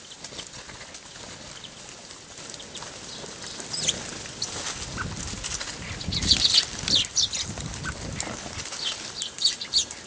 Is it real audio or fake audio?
real